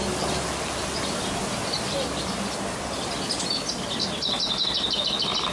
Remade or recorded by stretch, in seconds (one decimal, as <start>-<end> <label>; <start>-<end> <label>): 0.0-5.5 recorded